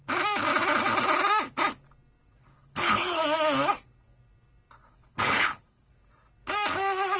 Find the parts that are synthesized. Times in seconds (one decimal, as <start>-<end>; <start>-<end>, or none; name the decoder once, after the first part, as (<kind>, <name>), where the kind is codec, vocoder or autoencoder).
2.4-3.2 (codec, HILCodec); 4.8-5.9